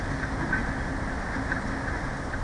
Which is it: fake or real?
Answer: real